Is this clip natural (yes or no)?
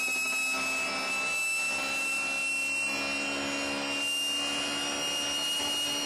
yes